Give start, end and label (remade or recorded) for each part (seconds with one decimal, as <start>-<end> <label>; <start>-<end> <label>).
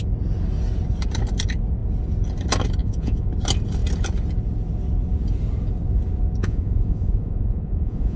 0.0-2.8 recorded; 2.8-3.3 remade; 3.3-6.4 recorded; 6.4-8.2 remade